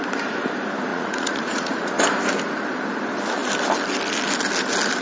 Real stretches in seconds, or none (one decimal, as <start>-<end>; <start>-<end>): 0.0-0.9; 2.0-5.0